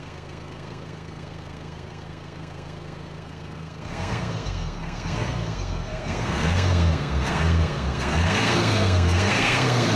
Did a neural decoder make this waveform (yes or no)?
yes